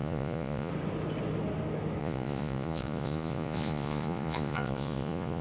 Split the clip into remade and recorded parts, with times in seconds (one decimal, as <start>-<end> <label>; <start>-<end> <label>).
0.0-0.7 remade; 0.7-2.0 recorded; 2.0-5.4 remade